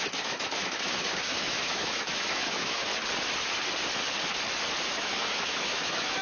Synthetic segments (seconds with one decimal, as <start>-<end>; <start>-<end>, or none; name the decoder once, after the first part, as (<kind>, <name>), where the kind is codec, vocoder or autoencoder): 0.0-2.9 (autoencoder, DAC-VAE); 4.9-6.2